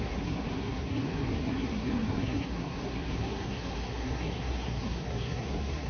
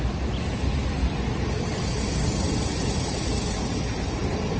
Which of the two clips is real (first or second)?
second